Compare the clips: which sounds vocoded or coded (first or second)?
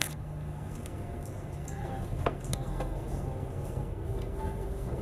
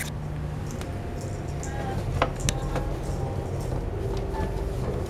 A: first